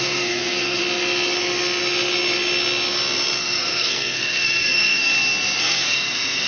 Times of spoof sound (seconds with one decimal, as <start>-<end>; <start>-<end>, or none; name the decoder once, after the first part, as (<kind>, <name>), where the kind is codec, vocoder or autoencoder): 0.0-0.8 (codec, SNAC); 3.4-5.1; 5.6-6.5